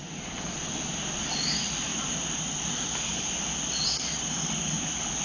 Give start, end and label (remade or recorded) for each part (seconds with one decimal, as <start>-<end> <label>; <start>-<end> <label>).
0.0-5.2 recorded